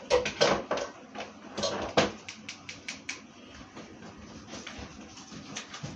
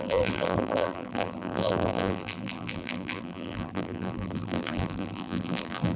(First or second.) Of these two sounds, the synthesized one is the second